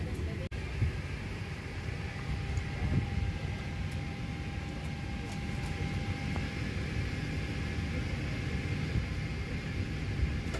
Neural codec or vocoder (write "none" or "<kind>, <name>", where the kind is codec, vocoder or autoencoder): none